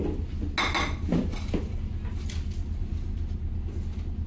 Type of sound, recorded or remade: recorded